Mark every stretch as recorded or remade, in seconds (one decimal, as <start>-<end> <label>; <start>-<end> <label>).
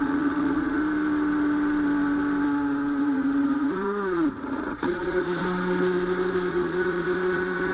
0.0-0.8 remade; 0.8-3.0 recorded; 3.0-5.4 remade; 5.4-6.5 recorded; 6.5-7.7 remade